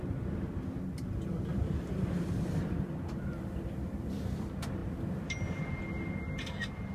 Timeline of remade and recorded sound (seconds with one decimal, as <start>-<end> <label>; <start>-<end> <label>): 0.0-1.5 recorded; 1.5-4.1 remade; 4.1-6.9 recorded